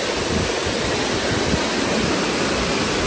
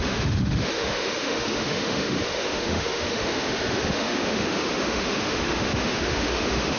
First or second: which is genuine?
first